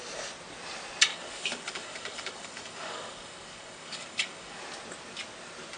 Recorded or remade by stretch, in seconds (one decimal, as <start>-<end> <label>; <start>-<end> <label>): 0.0-1.1 recorded; 1.1-4.6 remade; 4.6-5.8 recorded